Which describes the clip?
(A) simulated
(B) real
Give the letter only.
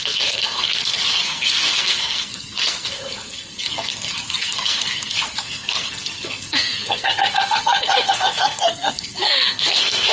A